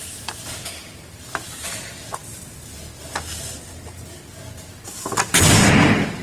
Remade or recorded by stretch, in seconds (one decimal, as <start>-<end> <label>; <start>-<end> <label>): 0.0-6.2 recorded